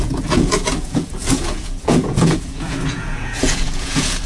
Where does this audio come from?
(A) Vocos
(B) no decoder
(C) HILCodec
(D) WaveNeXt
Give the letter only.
A